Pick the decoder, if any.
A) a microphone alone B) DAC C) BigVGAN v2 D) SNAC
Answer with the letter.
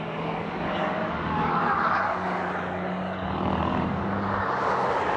B